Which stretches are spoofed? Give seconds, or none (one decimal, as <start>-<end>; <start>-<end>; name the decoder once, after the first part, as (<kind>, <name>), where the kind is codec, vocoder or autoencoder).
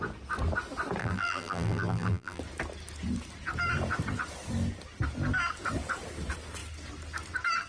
1.0-2.4 (vocoder, BigVGAN v2)